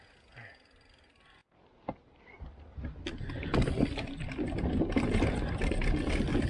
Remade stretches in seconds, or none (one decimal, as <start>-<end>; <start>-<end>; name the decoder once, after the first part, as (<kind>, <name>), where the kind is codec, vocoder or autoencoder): none